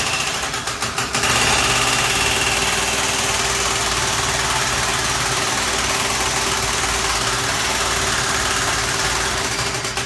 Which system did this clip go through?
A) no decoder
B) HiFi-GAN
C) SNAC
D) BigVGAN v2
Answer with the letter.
A